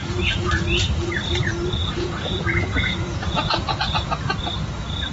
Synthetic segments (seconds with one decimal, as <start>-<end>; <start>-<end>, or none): 0.0-0.5; 1.8-4.4